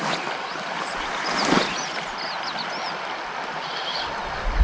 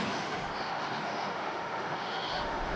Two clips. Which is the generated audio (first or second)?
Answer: second